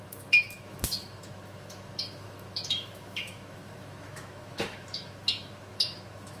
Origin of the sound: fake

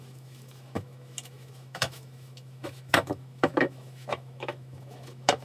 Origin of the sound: fake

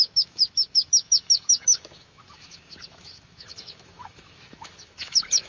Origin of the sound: fake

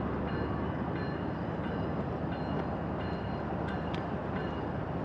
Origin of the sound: real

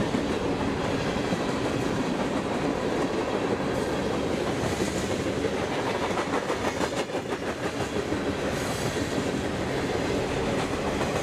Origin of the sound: real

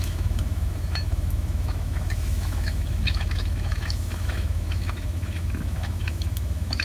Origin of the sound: fake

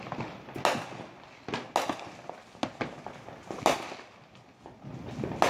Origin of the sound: real